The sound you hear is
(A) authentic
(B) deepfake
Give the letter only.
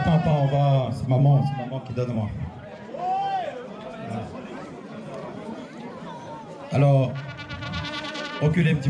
B